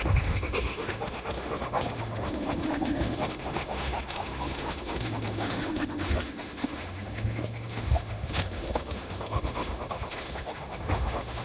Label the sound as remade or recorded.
remade